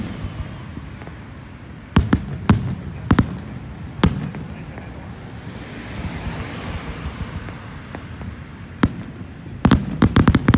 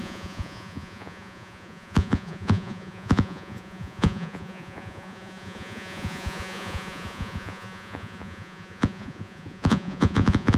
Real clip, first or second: first